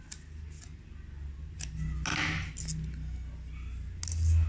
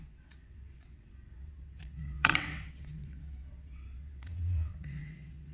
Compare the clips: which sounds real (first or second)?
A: first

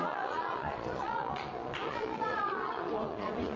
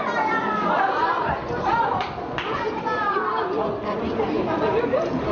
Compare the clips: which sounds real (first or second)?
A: second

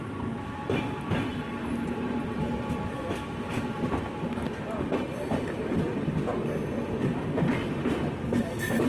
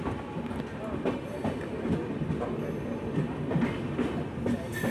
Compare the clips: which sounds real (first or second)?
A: second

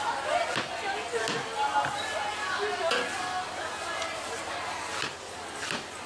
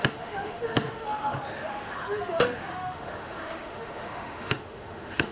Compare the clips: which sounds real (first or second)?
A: first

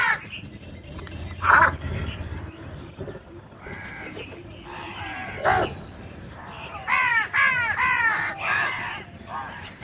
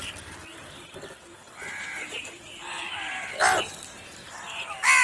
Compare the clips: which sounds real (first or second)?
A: second